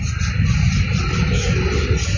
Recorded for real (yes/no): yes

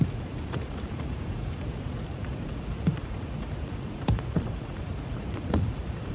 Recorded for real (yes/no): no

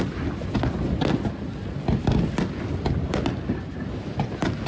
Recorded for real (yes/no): yes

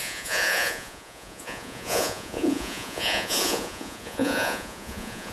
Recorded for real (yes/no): no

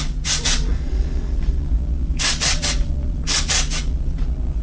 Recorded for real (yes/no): no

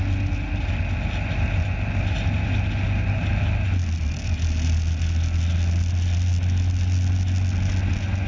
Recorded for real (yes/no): yes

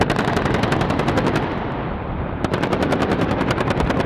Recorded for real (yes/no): yes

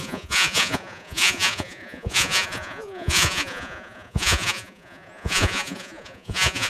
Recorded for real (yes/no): no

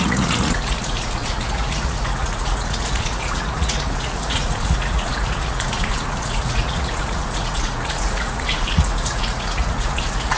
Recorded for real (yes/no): no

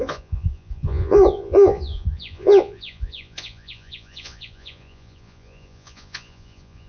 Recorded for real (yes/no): no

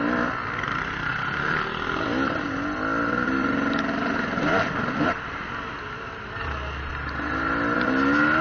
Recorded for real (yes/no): yes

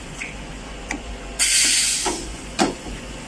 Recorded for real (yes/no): no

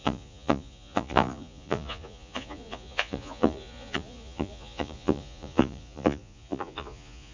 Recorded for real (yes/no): no